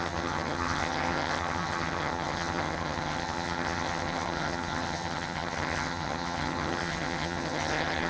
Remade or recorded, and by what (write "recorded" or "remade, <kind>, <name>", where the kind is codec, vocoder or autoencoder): remade, vocoder, HiFi-GAN